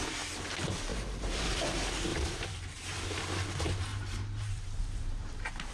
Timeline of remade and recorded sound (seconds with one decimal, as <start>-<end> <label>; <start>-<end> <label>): 0.0-0.9 recorded; 0.9-1.6 remade; 1.6-2.1 recorded; 2.1-3.2 remade; 3.2-3.9 recorded; 3.9-5.7 remade